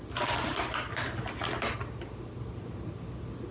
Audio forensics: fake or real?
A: real